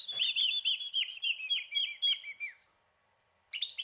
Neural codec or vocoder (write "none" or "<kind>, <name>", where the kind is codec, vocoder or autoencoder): vocoder, BigVGAN v2